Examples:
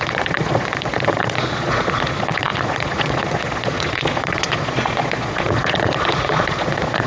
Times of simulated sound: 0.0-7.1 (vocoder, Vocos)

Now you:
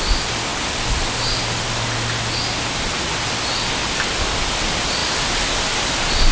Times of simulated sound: none

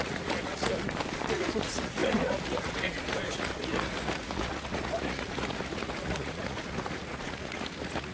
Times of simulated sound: 0.0-0.7 (vocoder, Vocos); 1.3-8.1

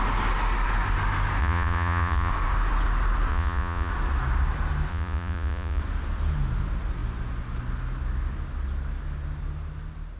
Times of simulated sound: 1.4-2.3 (vocoder, Vocos); 3.3-3.9; 4.9-5.8